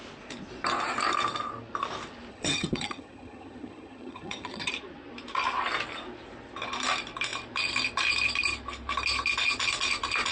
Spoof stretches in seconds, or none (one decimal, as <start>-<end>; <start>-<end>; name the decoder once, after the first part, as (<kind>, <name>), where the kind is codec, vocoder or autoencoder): 2.3-4.7 (vocoder, HiFi-GAN)